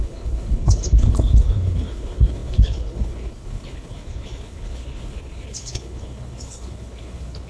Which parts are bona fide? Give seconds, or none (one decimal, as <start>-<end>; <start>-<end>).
none